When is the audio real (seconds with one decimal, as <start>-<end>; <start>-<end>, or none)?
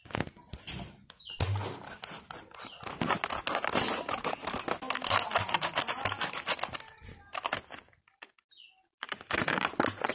0.0-10.1